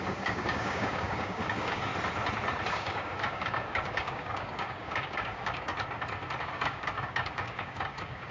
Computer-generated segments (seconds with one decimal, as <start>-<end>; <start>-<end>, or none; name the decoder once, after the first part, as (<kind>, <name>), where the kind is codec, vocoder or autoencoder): 0.0-1.9 (codec, DAC); 2.7-5.7; 6.4-8.3